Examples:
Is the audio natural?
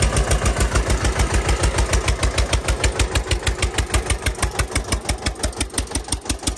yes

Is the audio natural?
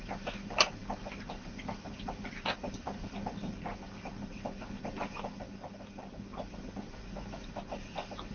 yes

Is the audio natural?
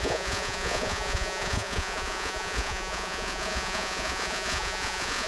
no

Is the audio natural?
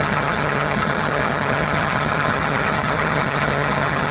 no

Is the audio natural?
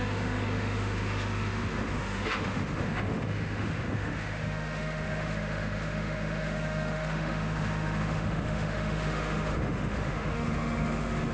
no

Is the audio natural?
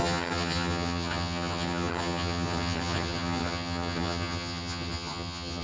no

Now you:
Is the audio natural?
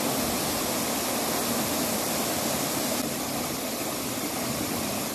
yes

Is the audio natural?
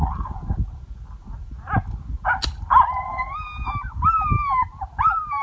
yes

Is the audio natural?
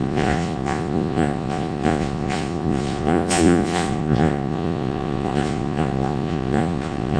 no